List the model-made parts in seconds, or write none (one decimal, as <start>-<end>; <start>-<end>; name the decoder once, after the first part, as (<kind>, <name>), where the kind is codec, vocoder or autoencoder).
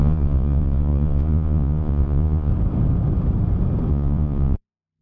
0.0-2.5 (vocoder, Vocos); 3.9-5.0